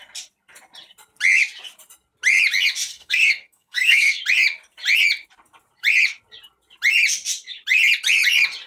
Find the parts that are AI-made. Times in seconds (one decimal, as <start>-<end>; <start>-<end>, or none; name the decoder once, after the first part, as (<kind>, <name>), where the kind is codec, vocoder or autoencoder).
2.9-4.2 (codec, SNAC)